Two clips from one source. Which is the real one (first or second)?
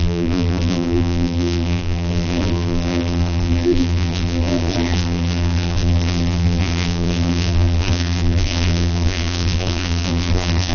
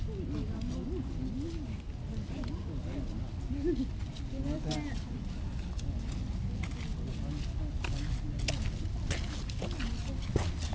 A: second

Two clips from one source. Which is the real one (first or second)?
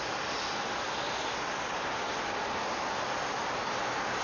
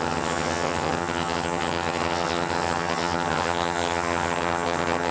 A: first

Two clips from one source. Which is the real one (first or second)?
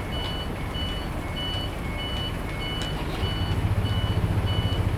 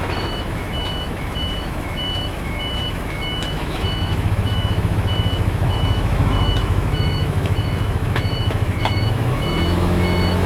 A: first